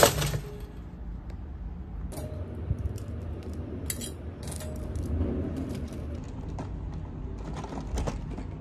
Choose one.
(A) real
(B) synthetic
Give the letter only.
A